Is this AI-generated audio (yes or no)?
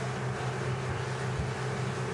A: no